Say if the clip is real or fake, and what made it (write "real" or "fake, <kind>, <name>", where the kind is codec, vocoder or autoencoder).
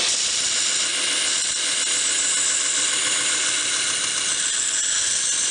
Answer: real